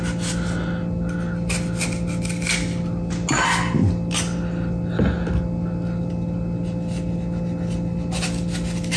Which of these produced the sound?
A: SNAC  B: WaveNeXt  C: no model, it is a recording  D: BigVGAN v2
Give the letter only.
C